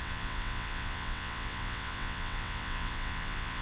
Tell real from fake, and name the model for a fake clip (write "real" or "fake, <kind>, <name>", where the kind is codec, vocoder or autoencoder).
fake, vocoder, WaveNeXt